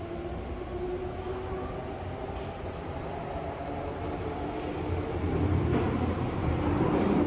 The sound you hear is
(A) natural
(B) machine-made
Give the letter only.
A